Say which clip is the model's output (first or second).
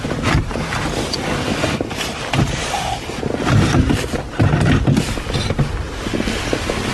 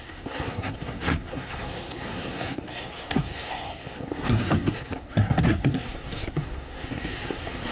second